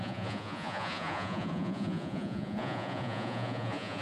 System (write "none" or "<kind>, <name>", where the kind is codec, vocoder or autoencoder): vocoder, Vocos